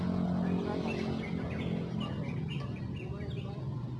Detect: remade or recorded recorded